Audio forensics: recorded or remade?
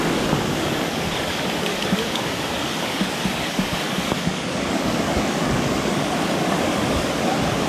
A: remade